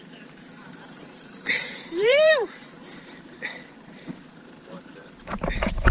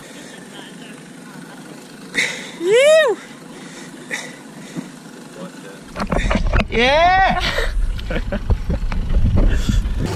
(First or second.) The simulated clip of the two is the first